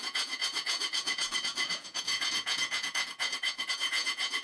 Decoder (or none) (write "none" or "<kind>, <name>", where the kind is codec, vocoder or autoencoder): vocoder, Vocos